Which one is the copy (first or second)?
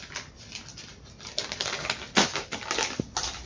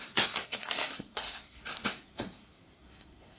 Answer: second